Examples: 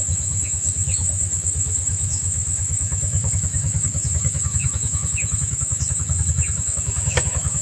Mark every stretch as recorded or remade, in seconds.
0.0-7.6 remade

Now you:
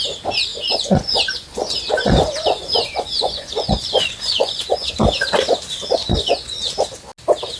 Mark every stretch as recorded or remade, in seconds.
0.0-0.5 recorded; 0.5-4.9 remade; 4.9-6.0 recorded; 6.0-6.7 remade; 6.7-7.6 recorded

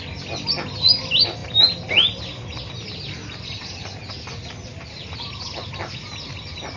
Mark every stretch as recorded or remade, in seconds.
0.0-6.8 recorded

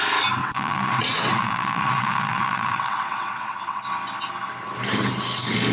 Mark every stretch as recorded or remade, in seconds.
0.0-0.4 recorded; 0.4-3.8 remade; 3.8-5.7 recorded

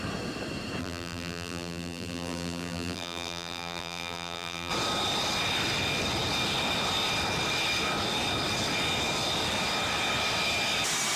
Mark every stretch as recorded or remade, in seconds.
0.0-0.8 recorded; 0.8-4.7 remade; 4.7-11.2 recorded

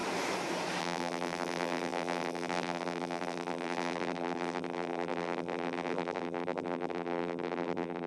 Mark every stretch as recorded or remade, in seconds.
0.0-0.8 recorded; 0.8-8.1 remade